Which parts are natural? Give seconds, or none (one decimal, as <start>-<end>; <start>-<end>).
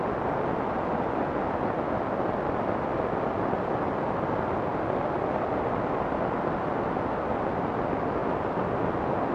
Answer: 0.0-9.3